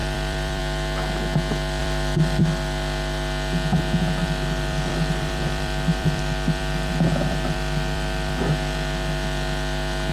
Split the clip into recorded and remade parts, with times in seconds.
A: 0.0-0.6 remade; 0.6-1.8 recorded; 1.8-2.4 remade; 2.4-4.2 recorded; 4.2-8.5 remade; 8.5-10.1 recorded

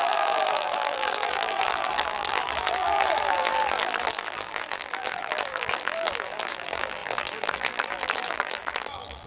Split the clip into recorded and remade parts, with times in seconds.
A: 0.0-9.3 remade

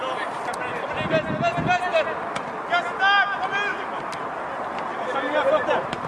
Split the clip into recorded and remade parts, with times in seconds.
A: 0.0-3.7 recorded; 3.7-4.4 remade; 4.4-4.9 recorded; 4.9-6.1 remade